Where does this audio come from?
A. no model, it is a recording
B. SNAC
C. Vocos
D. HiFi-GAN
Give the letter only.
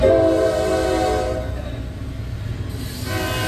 A